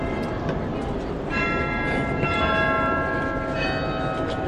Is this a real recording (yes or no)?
yes